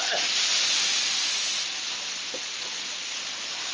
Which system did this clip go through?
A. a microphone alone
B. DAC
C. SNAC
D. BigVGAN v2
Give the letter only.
A